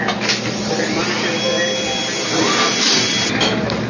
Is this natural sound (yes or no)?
yes